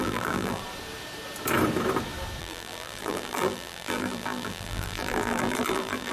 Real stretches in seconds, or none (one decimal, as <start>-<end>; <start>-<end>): 0.6-2.4